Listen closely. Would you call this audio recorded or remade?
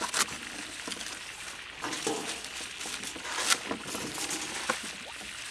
recorded